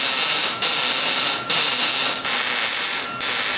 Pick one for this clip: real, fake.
real